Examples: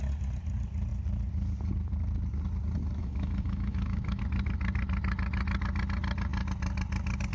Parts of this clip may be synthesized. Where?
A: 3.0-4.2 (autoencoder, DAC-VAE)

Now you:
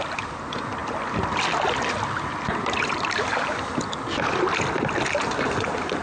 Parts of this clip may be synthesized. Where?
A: none